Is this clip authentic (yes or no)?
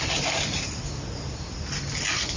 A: yes